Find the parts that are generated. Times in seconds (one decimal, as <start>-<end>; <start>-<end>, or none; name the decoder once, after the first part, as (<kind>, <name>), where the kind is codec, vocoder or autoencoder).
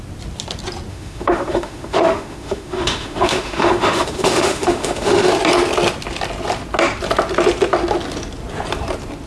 0.9-5.3 (autoencoder, DAC-VAE)